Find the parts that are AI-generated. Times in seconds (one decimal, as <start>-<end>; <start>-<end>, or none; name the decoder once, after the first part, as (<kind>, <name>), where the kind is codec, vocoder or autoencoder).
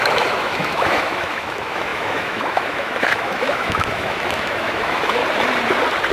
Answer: 0.0-5.2 (autoencoder, DAC-VAE)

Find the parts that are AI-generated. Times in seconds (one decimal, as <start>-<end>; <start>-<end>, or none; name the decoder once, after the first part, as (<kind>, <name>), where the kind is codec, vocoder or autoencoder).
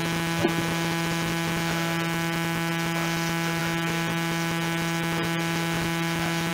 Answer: none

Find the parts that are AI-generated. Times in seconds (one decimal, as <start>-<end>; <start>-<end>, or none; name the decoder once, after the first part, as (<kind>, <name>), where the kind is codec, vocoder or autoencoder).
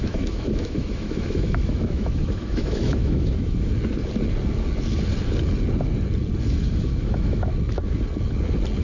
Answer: 0.0-3.7 (autoencoder, DAC-VAE); 6.8-7.5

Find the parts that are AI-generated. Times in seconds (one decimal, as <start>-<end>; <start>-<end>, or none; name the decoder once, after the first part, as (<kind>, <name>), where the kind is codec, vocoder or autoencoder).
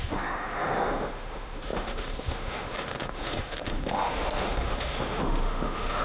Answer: 0.0-6.0 (autoencoder, DAC-VAE)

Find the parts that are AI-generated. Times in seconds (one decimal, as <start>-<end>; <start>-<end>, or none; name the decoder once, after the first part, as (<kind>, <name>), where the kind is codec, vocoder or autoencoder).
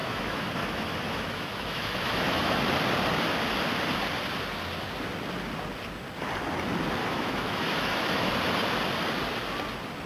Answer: 0.0-2.6 (autoencoder, DAC-VAE); 7.0-8.3